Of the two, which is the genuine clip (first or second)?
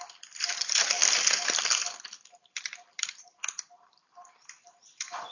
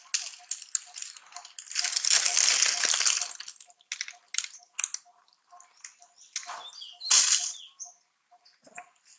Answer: second